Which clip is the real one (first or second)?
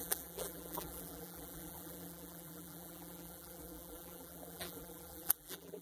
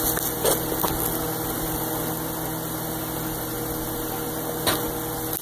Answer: second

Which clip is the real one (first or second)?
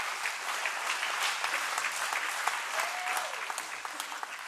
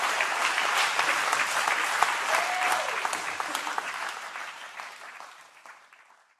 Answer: first